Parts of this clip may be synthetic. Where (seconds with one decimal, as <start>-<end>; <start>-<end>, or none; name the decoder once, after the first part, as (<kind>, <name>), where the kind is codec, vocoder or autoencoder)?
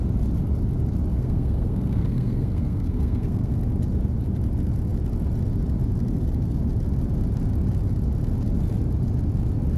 1.1-3.6 (codec, SNAC)